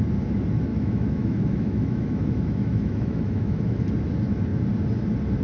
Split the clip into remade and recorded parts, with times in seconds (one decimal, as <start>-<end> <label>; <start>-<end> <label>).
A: 0.0-0.7 recorded; 0.7-3.9 remade; 3.9-5.4 recorded